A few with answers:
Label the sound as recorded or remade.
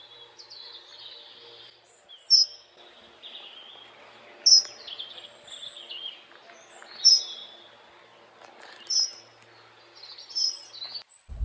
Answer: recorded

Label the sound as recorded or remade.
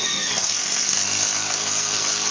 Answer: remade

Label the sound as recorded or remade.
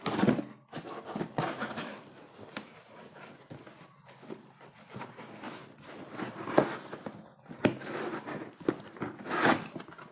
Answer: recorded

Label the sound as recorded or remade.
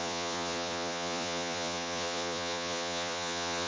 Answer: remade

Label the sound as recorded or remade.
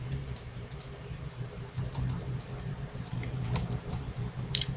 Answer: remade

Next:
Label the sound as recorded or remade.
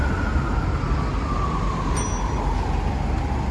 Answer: recorded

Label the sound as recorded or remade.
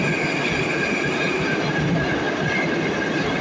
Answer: recorded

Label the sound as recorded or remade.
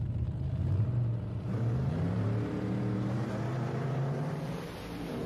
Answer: remade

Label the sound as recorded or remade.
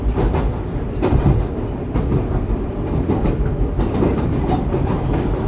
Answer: remade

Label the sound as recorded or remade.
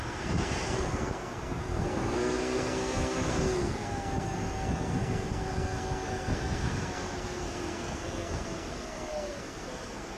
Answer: remade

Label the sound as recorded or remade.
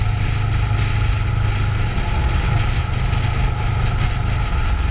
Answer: recorded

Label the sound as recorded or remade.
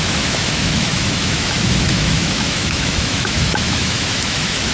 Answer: remade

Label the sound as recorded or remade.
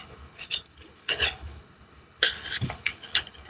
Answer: remade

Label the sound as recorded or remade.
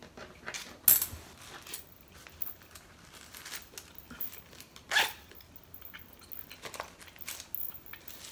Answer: recorded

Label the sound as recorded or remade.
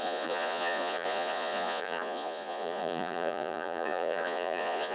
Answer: remade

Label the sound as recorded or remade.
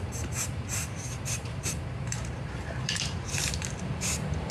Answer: remade